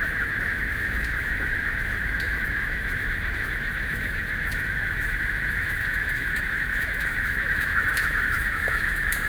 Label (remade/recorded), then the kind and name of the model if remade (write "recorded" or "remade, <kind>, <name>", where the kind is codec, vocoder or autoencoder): remade, autoencoder, DAC-VAE